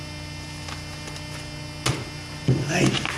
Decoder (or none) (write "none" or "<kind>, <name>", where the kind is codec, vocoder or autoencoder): none